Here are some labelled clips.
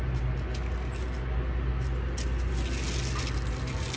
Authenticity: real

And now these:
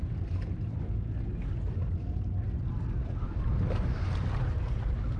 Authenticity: real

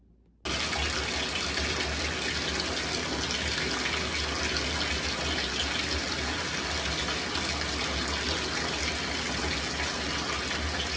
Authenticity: real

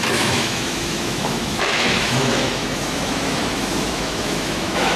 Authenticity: fake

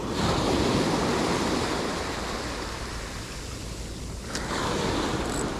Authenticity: real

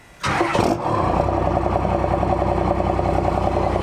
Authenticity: real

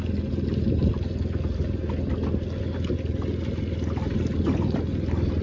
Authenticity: real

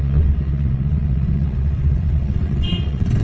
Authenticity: fake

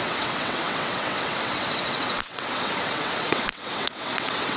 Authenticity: fake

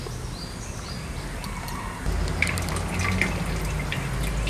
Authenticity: real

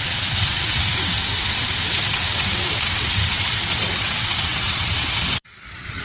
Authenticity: fake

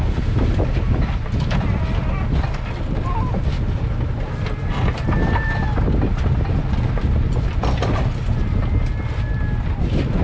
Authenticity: real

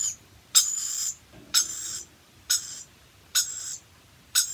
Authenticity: fake